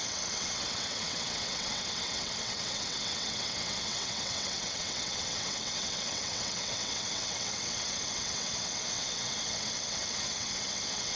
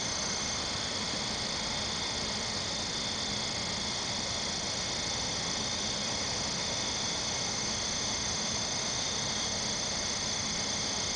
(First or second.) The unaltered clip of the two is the second